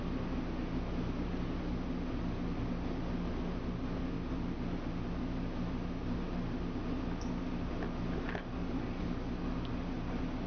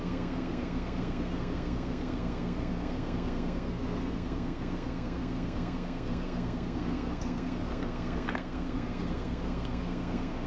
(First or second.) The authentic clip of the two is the first